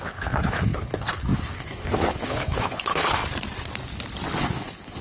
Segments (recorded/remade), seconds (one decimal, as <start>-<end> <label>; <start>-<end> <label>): 0.0-3.2 remade; 3.2-4.4 recorded; 4.4-5.0 remade